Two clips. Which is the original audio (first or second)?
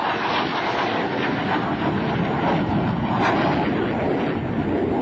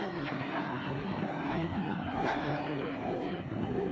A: first